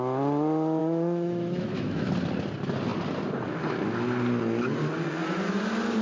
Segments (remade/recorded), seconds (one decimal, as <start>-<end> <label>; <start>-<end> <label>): 0.0-0.8 recorded; 0.8-2.1 remade; 2.1-6.0 recorded